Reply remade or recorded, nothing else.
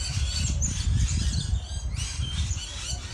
remade